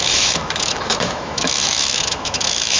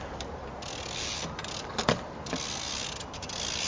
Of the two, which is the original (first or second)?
second